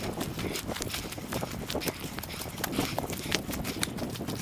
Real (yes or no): no